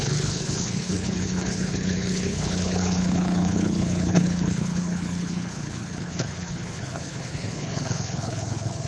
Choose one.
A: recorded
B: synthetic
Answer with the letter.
B